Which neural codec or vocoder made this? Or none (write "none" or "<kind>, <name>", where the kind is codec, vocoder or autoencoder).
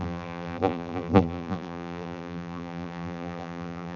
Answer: vocoder, BigVGAN v2